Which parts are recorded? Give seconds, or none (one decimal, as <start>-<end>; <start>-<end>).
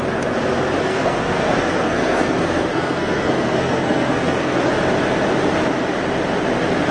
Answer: 0.0-0.8; 4.7-6.9